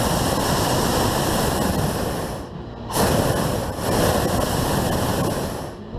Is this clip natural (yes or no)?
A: yes